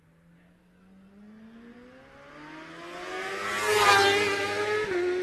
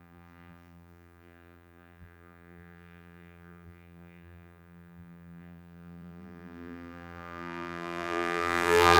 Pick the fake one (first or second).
second